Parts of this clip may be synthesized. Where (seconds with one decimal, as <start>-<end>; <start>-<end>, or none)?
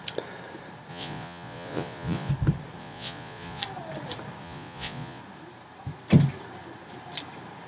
0.9-2.3; 2.8-3.6; 4.4-5.2